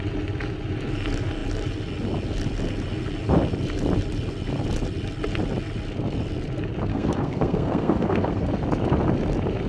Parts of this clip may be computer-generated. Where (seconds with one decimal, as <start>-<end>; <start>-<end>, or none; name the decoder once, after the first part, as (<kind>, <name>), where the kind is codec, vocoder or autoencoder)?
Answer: 6.9-8.5 (codec, SNAC)